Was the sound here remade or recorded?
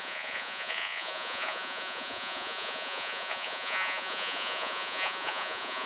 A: remade